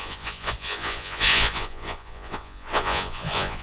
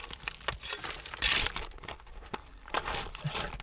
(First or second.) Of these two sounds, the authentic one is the second